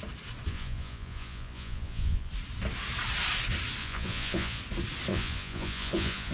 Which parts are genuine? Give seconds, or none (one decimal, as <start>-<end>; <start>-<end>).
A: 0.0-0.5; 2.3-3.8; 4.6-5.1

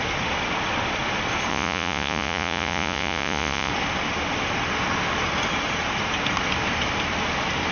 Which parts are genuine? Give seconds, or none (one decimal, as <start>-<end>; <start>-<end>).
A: 0.0-1.5; 3.7-7.7

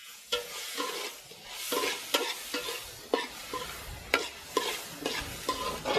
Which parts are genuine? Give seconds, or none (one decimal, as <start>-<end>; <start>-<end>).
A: 0.9-6.0

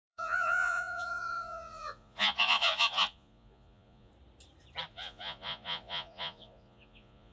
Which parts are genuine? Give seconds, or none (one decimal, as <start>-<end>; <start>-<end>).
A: 4.1-4.9

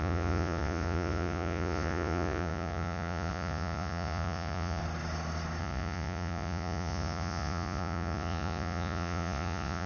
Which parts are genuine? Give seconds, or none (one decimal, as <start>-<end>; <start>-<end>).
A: 4.8-5.6

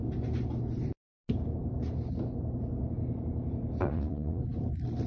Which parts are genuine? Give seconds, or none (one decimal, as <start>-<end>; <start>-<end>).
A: 0.0-3.8; 4.4-5.1

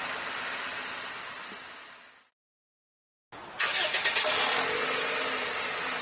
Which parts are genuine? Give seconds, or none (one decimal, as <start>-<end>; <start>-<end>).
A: 0.0-6.0

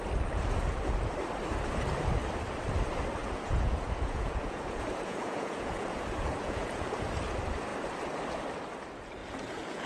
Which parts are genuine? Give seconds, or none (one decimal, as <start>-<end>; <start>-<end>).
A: 0.0-3.2; 7.1-9.2